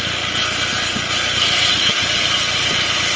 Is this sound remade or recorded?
recorded